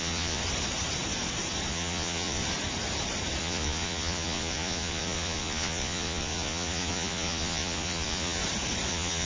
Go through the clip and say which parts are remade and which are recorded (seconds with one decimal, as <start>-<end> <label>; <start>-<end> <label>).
0.0-0.4 remade; 0.4-1.7 recorded; 1.7-2.4 remade; 2.4-3.4 recorded; 3.4-8.4 remade; 8.4-8.9 recorded; 8.9-9.3 remade